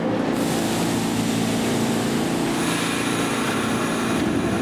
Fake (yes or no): no